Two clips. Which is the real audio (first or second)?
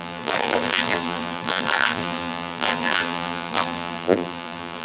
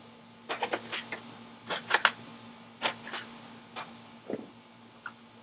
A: second